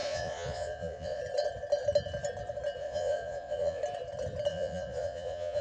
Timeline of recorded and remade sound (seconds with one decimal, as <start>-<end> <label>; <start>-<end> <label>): 0.0-1.2 remade; 1.2-2.8 recorded; 2.8-3.8 remade; 3.8-4.5 recorded; 4.5-5.6 remade